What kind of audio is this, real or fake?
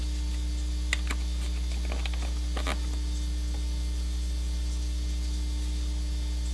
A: real